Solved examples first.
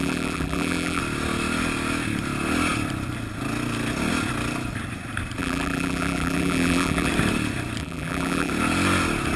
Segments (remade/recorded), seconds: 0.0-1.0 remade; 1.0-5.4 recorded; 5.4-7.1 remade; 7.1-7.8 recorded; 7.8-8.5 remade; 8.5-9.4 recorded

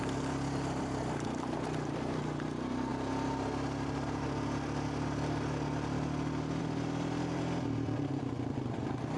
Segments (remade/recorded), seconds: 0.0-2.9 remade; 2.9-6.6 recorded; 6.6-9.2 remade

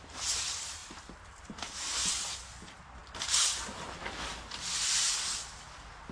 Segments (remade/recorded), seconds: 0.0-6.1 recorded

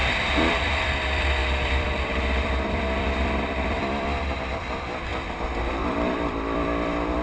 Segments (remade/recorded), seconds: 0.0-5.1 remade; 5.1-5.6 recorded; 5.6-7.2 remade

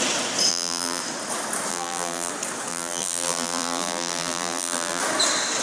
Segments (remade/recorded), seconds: 0.0-0.5 recorded; 0.5-1.0 remade; 1.0-1.7 recorded; 1.7-2.3 remade; 2.3-2.7 recorded; 2.7-5.0 remade; 5.0-5.6 recorded